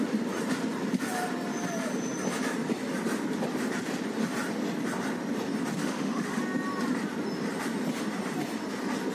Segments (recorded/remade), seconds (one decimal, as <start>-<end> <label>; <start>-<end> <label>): 0.0-5.8 recorded; 5.8-6.4 remade; 6.4-9.1 recorded